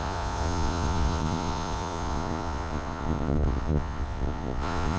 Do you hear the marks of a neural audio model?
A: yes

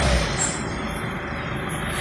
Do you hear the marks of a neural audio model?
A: no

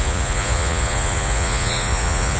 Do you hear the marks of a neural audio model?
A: yes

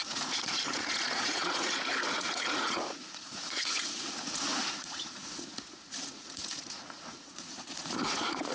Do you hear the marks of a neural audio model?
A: yes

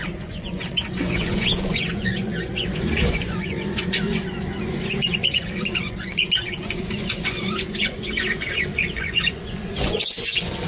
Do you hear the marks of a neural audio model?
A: yes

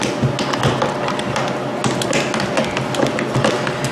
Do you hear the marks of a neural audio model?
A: no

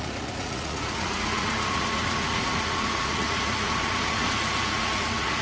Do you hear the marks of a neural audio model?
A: yes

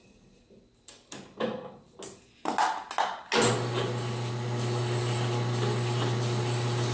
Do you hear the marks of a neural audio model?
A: no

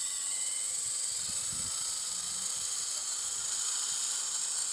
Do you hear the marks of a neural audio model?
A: no